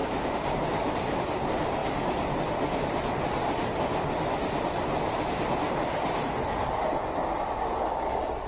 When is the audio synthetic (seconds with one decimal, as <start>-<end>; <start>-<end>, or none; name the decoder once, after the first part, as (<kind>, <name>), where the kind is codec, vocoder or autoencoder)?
0.0-0.6 (codec, DAC)